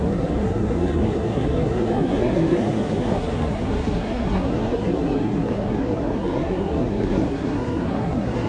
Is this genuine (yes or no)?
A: no